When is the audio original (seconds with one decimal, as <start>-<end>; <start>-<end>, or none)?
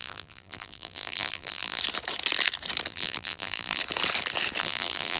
1.8-2.9; 3.8-4.6